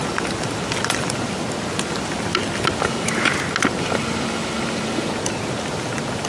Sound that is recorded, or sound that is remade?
recorded